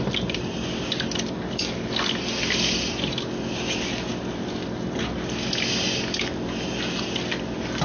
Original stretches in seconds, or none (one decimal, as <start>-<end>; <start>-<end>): 0.0-7.8